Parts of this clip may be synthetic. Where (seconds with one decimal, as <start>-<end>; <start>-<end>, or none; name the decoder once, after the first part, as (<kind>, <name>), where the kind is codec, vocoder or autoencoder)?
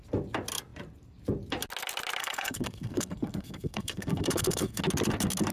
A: 2.2-4.8 (codec, SNAC)